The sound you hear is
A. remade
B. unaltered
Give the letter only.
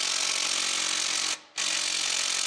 B